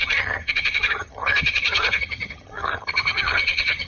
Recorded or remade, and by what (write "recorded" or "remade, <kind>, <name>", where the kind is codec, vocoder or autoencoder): remade, vocoder, HiFi-GAN